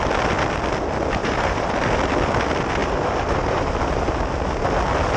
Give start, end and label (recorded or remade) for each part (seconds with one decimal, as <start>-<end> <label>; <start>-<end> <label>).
0.0-1.2 recorded; 1.2-1.7 remade; 1.7-2.8 recorded; 2.8-3.7 remade; 3.7-5.2 recorded

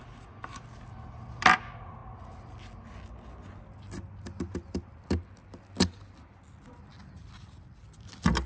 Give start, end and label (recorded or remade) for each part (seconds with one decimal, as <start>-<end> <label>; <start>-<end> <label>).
0.0-8.5 recorded

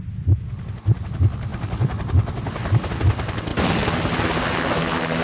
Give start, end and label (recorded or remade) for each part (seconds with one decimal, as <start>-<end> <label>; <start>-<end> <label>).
0.0-1.5 recorded; 1.5-2.9 remade; 2.9-5.2 recorded

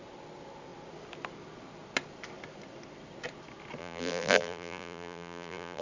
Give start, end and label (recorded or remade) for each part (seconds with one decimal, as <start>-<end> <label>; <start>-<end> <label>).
0.0-3.8 recorded; 3.8-5.8 remade

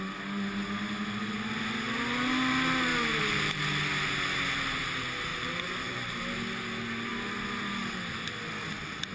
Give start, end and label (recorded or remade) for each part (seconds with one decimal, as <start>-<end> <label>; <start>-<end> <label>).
0.0-2.9 recorded; 2.9-3.6 remade; 3.6-5.3 recorded; 5.3-6.2 remade; 6.2-9.1 recorded

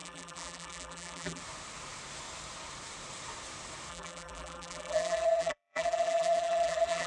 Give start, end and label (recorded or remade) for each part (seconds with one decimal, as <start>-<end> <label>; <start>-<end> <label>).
0.0-1.4 remade; 1.4-3.9 recorded; 3.9-7.1 remade

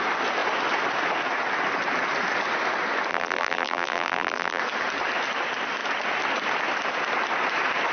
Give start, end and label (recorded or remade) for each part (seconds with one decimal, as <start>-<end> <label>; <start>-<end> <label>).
0.0-3.1 recorded; 3.1-4.6 remade; 4.6-7.9 recorded

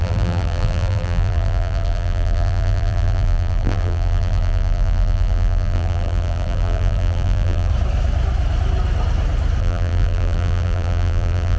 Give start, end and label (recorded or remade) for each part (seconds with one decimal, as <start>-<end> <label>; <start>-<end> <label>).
0.0-7.7 remade; 7.7-9.6 recorded; 9.6-11.6 remade